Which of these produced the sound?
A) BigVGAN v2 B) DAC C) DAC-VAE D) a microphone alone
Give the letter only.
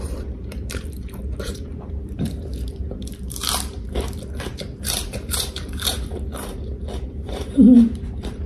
A